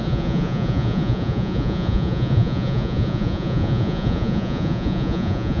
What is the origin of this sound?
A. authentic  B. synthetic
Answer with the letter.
B